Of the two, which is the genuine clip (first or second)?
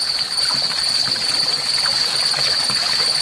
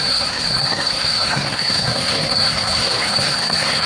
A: first